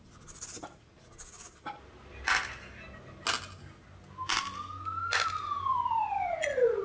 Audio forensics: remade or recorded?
recorded